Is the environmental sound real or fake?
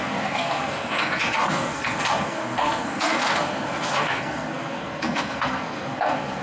fake